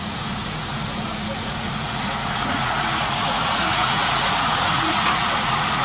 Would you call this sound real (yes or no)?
no